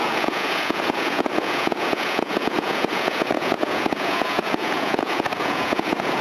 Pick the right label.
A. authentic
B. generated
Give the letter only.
B